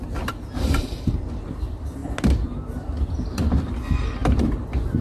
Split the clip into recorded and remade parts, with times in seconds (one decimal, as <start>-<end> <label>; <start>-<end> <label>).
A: 0.0-2.0 remade; 2.0-3.7 recorded; 3.7-5.0 remade